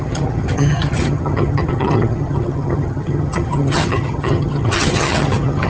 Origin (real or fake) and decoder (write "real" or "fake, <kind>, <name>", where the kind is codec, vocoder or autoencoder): fake, vocoder, HiFi-GAN